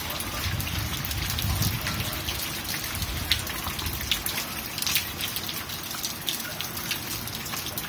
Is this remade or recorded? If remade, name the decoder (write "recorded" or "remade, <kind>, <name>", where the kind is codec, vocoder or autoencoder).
recorded